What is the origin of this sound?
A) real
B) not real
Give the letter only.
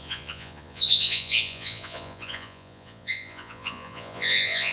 B